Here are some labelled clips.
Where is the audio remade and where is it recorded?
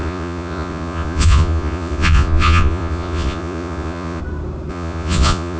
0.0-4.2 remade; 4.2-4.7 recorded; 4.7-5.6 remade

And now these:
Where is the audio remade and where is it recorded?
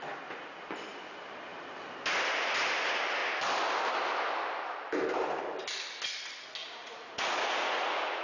0.0-6.6 recorded; 6.6-8.2 remade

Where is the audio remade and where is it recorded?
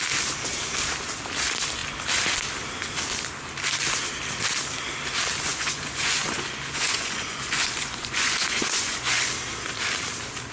0.0-5.5 recorded; 5.5-9.3 remade; 9.3-10.5 recorded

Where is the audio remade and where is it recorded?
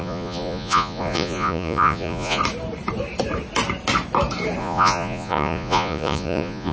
0.0-2.4 remade; 2.4-4.6 recorded; 4.6-6.7 remade